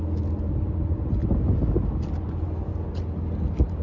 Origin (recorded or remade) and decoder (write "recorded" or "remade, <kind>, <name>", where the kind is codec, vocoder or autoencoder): recorded